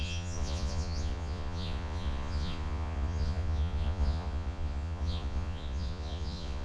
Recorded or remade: remade